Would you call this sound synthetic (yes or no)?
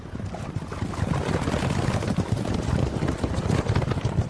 no